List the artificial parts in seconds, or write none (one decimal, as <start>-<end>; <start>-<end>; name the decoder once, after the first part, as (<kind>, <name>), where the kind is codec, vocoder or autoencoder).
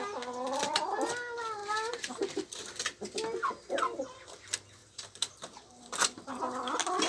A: 4.8-6.4 (vocoder, BigVGAN v2)